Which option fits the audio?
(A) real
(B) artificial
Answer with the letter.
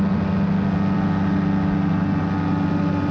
A